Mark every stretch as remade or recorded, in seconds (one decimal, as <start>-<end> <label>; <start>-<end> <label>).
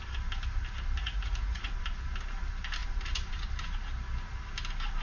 0.0-1.0 recorded; 1.0-1.7 remade; 1.7-5.0 recorded